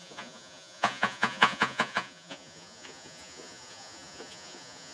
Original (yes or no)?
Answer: no